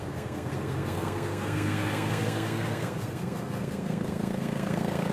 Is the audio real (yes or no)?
no